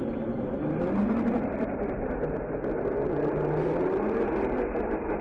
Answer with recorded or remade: recorded